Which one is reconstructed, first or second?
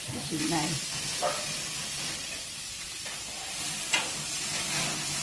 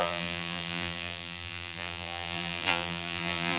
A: second